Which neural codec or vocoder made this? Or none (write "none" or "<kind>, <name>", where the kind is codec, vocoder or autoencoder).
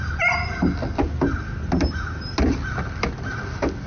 none